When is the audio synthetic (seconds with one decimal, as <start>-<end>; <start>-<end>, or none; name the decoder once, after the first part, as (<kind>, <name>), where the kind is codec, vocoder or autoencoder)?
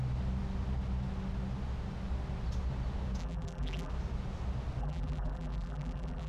3.2-3.9 (vocoder, BigVGAN v2); 4.8-6.3